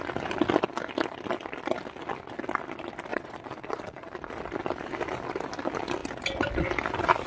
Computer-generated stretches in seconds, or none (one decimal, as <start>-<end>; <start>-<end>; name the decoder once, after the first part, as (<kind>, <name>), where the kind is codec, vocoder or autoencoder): 3.1-4.1 (vocoder, Vocos)